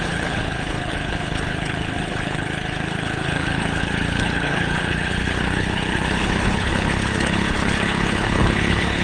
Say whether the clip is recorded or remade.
remade